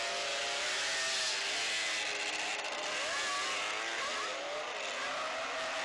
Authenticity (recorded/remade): recorded